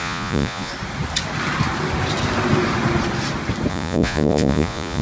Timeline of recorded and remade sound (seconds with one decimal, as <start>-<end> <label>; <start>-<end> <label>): 0.0-0.7 remade; 0.7-3.7 recorded; 3.7-5.0 remade